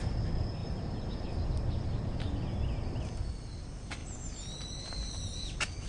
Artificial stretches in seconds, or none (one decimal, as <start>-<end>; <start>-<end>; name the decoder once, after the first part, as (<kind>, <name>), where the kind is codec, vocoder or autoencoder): none